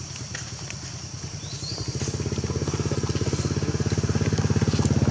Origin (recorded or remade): recorded